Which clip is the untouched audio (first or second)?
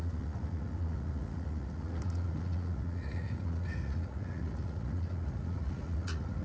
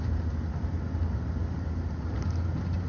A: second